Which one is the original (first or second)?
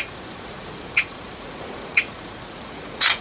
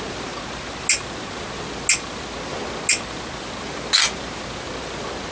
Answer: second